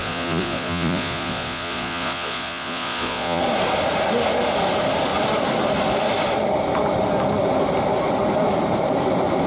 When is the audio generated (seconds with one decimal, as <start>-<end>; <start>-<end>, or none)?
0.0-3.4